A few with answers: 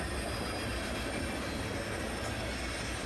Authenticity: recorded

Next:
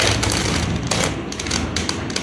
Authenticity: recorded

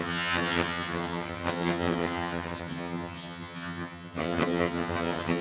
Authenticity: remade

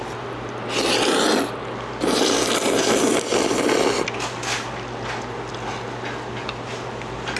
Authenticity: recorded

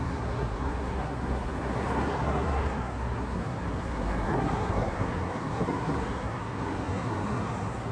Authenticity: remade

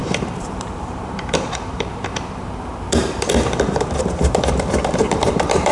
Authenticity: remade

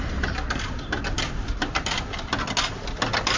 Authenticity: recorded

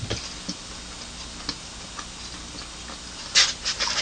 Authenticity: recorded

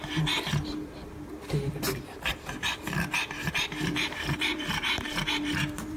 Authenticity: remade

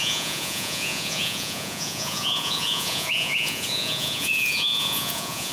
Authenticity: remade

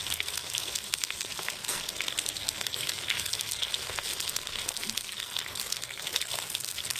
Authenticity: remade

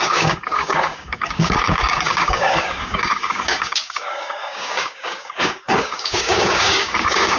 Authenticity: remade